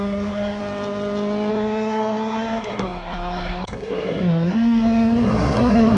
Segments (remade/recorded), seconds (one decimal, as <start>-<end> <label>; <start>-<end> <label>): 0.0-0.6 remade; 0.6-1.5 recorded; 1.5-6.0 remade